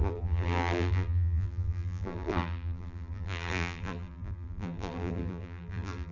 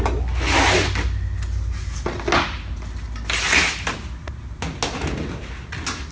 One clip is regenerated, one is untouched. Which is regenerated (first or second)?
first